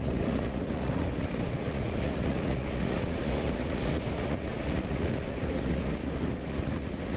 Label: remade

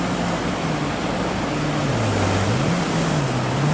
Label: recorded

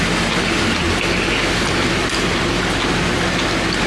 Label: recorded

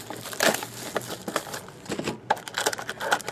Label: recorded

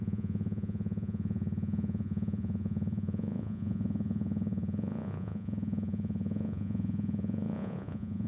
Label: remade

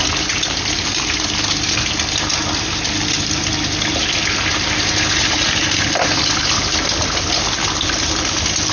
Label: recorded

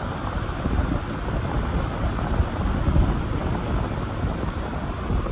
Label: recorded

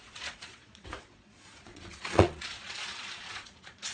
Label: remade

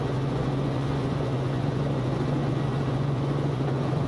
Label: remade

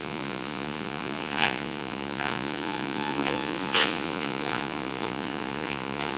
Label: remade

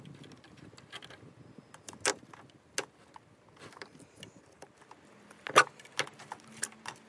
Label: recorded